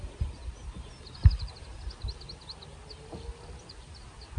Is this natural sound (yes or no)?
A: yes